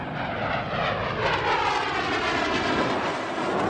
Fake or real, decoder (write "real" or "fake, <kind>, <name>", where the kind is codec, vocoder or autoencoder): real